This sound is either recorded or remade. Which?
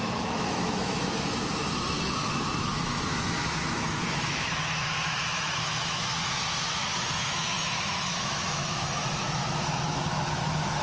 remade